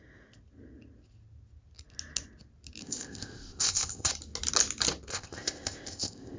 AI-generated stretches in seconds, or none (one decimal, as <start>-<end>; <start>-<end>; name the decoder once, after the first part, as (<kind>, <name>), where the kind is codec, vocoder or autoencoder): 2.8-4.1 (codec, ZipCodec); 5.1-6.4